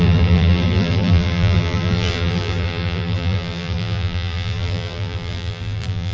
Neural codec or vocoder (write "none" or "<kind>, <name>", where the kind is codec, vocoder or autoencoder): vocoder, BigVGAN v2